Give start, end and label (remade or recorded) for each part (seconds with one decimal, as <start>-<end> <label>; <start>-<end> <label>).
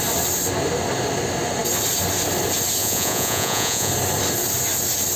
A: 0.0-2.8 recorded; 2.8-3.9 remade; 3.9-5.2 recorded